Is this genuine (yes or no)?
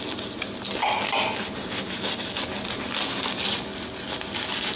yes